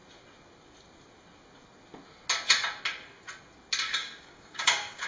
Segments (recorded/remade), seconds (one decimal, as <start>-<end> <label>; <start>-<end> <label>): 0.0-4.0 recorded; 4.0-5.1 remade